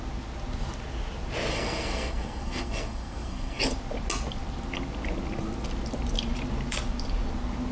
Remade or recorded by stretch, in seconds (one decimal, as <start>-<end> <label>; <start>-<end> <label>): 0.0-1.5 recorded; 1.5-3.6 remade; 3.6-7.7 recorded